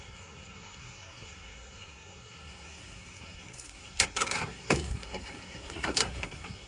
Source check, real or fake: fake